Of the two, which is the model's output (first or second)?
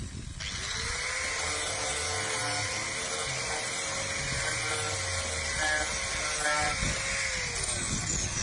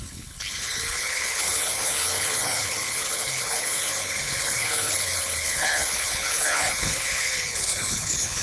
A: second